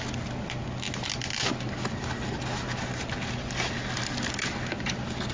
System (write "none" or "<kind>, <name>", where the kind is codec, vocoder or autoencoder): none